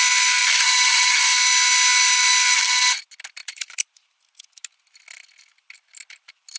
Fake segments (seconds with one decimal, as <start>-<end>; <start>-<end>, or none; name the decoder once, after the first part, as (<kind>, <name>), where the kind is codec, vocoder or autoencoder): 0.4-1.1 (vocoder, BigVGAN v2); 3.4-4.2